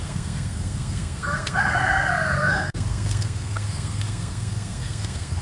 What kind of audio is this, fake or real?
fake